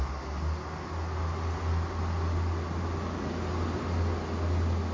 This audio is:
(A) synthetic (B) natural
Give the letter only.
B